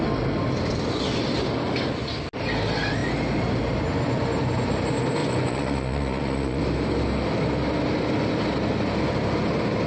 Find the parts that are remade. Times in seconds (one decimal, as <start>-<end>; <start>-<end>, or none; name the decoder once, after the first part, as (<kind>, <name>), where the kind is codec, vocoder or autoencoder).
5.2-6.6 (vocoder, Vocos)